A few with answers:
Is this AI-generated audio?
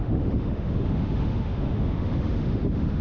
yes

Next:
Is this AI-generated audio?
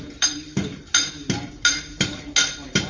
no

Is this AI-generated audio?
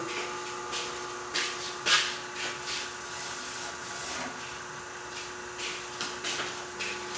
no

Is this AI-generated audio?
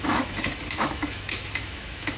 yes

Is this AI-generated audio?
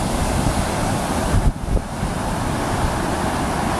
no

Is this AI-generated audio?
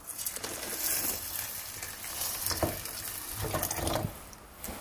no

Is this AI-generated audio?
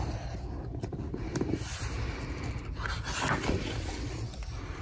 no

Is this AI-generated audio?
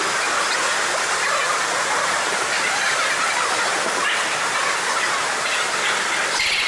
no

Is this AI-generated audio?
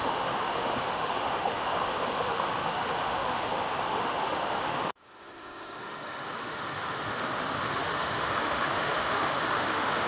yes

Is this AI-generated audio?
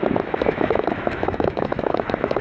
yes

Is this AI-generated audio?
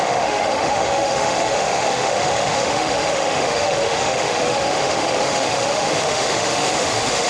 yes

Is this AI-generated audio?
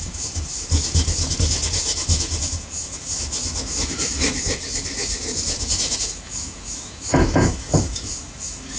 yes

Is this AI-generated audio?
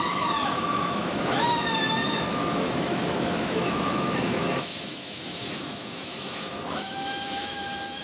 yes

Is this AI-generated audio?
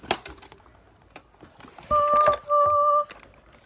no